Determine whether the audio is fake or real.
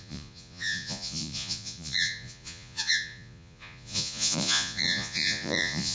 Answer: fake